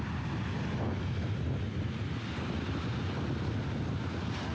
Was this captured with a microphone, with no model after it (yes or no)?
yes